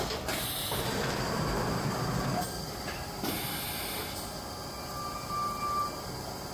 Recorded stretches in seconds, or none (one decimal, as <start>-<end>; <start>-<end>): 0.0-0.6; 3.3-6.5